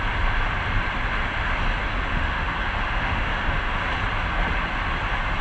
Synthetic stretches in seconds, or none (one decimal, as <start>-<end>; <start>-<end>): 2.1-3.8